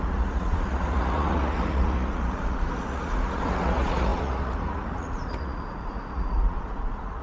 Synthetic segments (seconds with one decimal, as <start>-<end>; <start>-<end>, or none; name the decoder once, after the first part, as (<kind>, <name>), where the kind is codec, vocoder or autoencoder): 0.0-7.2 (vocoder, Vocos)